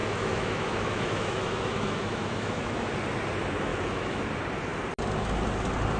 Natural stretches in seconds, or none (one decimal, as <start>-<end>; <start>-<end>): 2.9-3.7; 4.2-6.0